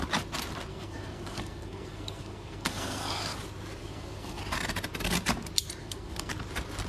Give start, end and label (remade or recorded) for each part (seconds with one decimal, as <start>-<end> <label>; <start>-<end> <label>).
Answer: 0.0-0.7 recorded; 0.7-3.4 remade; 3.4-3.8 recorded; 3.8-4.4 remade; 4.4-5.8 recorded; 5.8-6.3 remade; 6.3-6.9 recorded